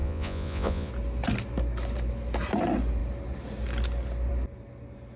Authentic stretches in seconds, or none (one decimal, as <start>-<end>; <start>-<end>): 0.9-5.2

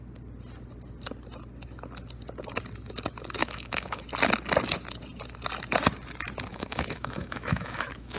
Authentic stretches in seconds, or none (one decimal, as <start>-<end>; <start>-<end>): 0.0-3.4; 4.0-6.5

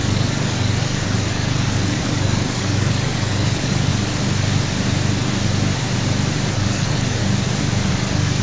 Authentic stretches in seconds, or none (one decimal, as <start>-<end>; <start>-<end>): 3.9-6.5; 7.2-7.9

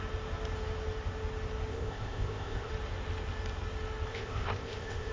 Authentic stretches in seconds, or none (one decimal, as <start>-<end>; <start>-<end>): 0.0-1.7; 2.7-4.1

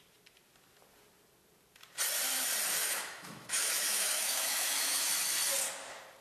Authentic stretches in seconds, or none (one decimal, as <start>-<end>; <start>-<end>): 0.0-2.8; 5.1-6.2

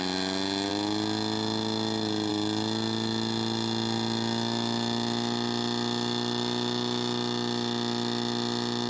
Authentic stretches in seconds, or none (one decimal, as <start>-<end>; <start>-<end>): 0.0-8.9

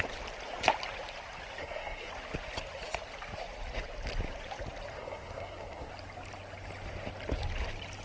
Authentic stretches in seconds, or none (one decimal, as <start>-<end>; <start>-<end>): 0.0-1.6; 2.1-4.9; 5.9-8.0

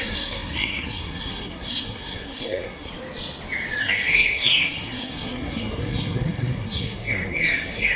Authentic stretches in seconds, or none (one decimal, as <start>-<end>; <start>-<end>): 2.9-3.8